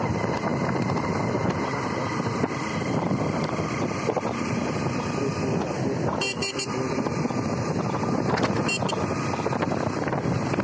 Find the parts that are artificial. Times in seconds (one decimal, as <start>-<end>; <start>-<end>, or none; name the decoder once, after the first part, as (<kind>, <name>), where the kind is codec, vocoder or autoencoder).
none